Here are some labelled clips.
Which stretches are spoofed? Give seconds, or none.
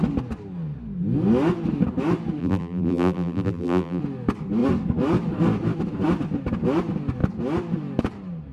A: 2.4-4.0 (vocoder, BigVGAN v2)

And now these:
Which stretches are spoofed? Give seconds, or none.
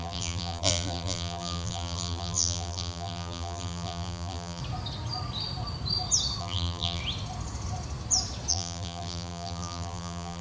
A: 0.0-4.6 (vocoder, BigVGAN v2); 6.4-7.0; 8.5-10.4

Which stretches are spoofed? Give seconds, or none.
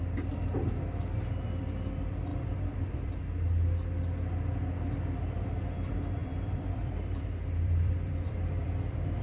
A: 2.3-3.2 (vocoder, BigVGAN v2); 6.2-9.2